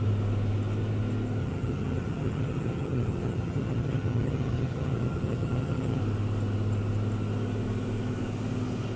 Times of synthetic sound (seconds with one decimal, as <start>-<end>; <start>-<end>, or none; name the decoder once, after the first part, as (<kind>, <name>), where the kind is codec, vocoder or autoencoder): 1.4-6.0 (vocoder, HiFi-GAN)

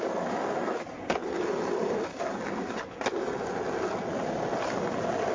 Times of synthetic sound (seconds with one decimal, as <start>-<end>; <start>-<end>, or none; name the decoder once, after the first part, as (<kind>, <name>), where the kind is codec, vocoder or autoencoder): none

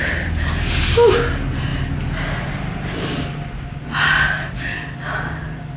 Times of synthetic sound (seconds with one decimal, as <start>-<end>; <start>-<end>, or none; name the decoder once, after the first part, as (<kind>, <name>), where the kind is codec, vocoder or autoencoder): none

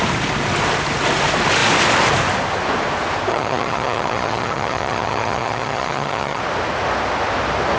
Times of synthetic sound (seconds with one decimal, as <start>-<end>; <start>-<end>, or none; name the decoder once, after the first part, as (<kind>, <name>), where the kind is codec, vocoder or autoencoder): 3.3-6.4 (vocoder, HiFi-GAN)

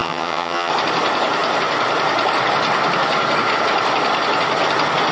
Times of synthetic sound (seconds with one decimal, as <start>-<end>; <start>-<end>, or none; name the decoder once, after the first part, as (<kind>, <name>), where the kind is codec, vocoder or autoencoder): 0.0-0.7 (vocoder, HiFi-GAN)

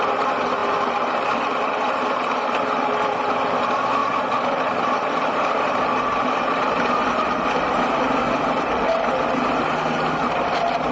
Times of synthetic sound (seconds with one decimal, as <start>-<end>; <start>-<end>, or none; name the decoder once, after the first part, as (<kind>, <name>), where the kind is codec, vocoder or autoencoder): none